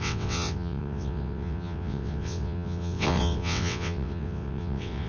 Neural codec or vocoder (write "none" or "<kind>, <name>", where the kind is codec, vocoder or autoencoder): vocoder, WaveNeXt